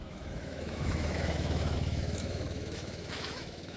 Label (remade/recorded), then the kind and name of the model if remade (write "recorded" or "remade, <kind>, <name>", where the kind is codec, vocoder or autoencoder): remade, autoencoder, DAC-VAE